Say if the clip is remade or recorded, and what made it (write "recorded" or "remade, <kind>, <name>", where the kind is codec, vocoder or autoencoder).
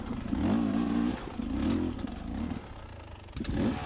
recorded